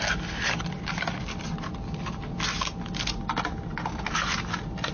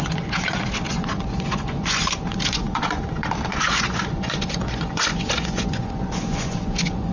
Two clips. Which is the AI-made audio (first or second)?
second